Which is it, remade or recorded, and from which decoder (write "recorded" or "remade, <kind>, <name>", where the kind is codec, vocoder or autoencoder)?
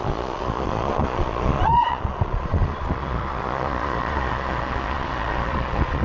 remade, vocoder, Vocos